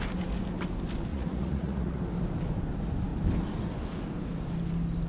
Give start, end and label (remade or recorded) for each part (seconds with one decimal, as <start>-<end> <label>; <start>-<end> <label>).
0.0-1.1 recorded; 1.1-2.0 remade; 2.0-5.1 recorded